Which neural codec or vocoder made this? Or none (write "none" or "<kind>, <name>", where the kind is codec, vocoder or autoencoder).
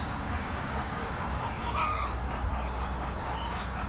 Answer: codec, DAC